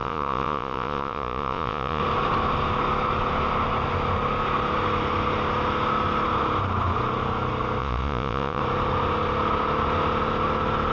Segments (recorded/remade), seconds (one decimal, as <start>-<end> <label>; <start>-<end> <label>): 0.0-2.0 remade; 2.0-7.8 recorded; 7.8-8.6 remade; 8.6-10.9 recorded